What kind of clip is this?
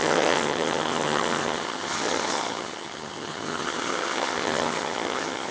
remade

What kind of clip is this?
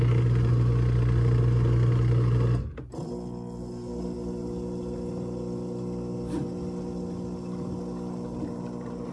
recorded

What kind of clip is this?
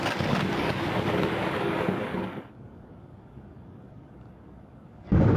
remade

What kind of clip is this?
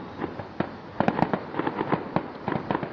recorded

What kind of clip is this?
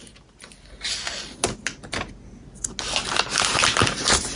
recorded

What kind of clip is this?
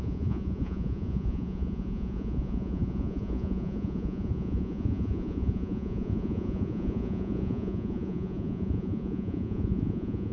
remade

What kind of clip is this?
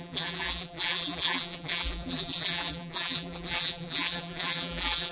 remade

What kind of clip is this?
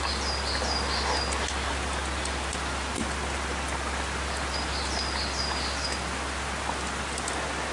recorded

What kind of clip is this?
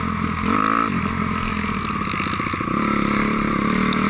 recorded